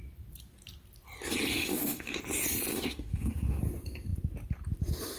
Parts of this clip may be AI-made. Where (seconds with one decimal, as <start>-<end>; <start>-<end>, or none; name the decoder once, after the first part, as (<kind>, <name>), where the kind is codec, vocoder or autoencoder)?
1.5-2.2 (autoencoder, DAC-VAE); 2.7-3.6